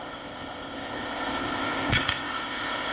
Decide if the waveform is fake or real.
fake